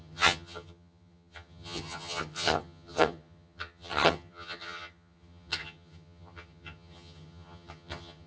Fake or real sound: fake